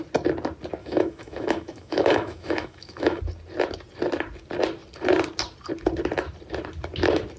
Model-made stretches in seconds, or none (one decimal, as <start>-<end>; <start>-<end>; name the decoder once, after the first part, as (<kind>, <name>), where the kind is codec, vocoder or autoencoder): 0.8-3.2 (autoencoder, DAC-VAE)